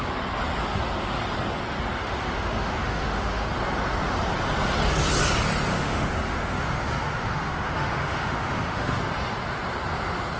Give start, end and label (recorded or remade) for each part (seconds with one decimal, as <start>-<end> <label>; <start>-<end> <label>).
0.0-2.0 recorded; 2.0-3.5 remade; 3.5-5.7 recorded; 5.7-9.0 remade; 9.0-10.4 recorded